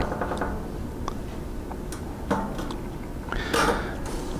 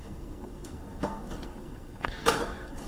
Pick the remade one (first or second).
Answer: second